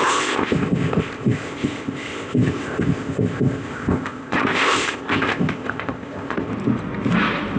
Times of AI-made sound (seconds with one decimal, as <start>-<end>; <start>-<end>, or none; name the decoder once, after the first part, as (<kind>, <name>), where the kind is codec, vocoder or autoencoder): 0.0-6.5 (codec, ZipCodec)